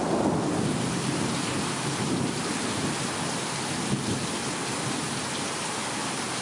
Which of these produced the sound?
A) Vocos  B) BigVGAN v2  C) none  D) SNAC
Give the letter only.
C